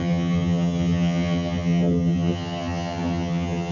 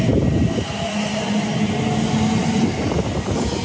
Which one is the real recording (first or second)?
second